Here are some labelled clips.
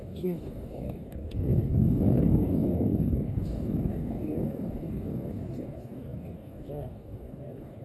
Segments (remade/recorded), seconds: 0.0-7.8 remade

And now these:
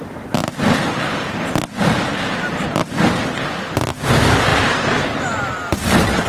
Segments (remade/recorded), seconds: 0.0-6.3 recorded

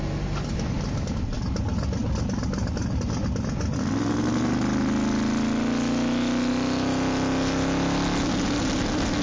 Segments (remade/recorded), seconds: 0.0-9.2 recorded

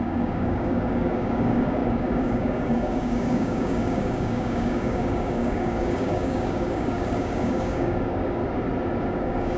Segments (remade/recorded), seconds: 0.0-8.4 remade; 8.4-9.0 recorded; 9.0-9.6 remade

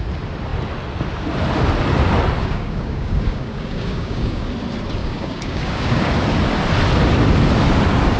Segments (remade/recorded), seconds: 0.0-2.4 recorded; 2.4-4.5 remade; 4.5-5.0 recorded; 5.0-6.1 remade; 6.1-8.2 recorded

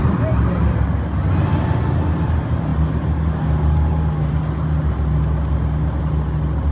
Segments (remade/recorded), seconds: 0.0-6.7 recorded